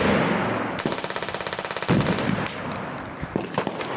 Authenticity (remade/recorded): recorded